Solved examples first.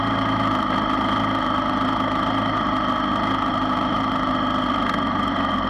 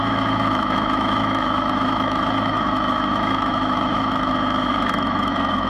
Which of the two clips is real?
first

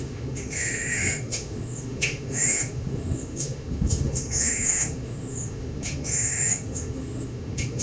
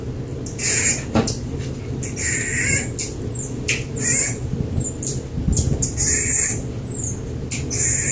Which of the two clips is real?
second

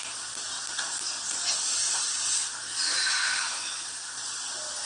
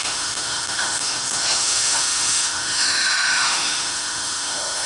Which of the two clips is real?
first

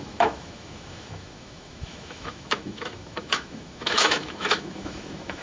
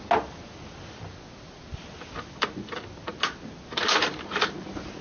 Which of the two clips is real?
second